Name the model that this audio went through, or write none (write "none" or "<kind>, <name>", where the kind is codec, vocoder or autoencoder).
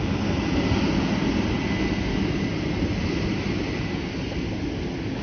none